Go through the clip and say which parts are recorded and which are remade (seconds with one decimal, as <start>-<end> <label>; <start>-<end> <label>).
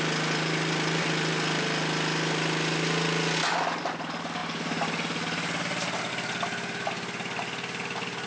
0.0-8.3 recorded